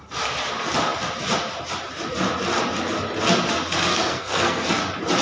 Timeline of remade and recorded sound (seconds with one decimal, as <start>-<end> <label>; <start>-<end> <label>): 0.0-3.9 recorded; 3.9-4.8 remade; 4.8-5.2 recorded